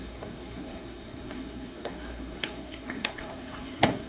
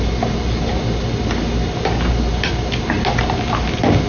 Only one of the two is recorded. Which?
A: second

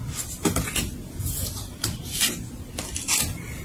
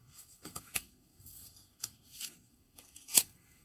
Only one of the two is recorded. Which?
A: first